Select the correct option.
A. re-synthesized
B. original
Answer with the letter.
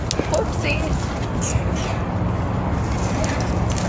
B